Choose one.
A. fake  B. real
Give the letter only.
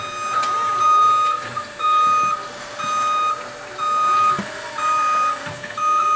B